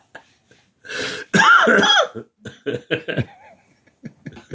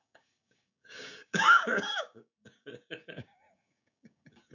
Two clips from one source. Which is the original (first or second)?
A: first